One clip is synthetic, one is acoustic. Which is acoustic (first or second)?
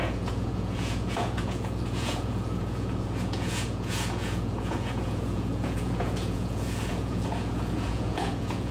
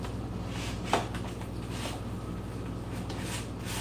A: second